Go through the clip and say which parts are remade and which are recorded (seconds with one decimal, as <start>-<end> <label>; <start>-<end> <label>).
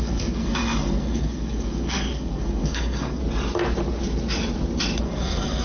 0.0-3.2 remade; 3.2-5.0 recorded; 5.0-5.6 remade